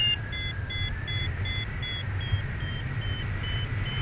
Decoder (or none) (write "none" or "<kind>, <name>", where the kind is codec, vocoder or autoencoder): none